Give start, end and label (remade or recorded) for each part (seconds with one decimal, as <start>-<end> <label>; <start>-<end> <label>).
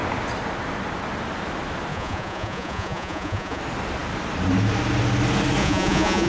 0.0-1.9 recorded; 1.9-3.6 remade; 3.6-5.6 recorded; 5.6-6.3 remade